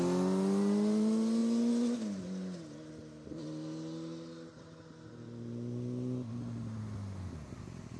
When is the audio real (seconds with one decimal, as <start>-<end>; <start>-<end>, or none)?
0.0-8.0